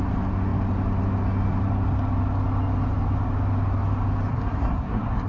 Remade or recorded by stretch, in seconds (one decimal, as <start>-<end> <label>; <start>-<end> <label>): 0.0-4.3 recorded; 4.3-5.3 remade